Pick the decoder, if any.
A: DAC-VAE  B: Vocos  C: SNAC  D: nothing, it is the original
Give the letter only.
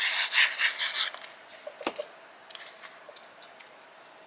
D